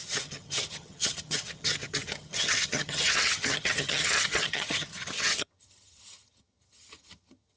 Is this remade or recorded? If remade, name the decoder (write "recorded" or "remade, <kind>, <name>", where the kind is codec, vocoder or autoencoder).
remade, vocoder, HiFi-GAN